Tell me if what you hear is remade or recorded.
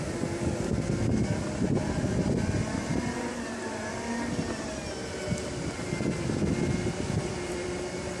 recorded